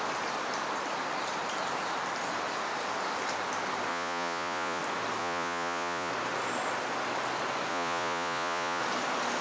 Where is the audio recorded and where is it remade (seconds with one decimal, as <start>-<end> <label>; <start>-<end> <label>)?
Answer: 0.0-3.9 recorded; 3.9-4.8 remade; 4.8-5.2 recorded; 5.2-6.1 remade; 6.1-7.7 recorded; 7.7-8.8 remade; 8.8-9.4 recorded